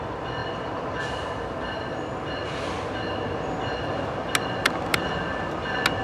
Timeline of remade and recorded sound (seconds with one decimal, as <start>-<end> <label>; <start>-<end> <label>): 0.0-6.0 recorded